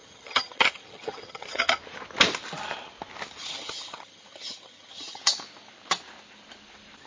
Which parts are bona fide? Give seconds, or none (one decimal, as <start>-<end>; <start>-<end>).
1.6-3.4; 5.2-7.1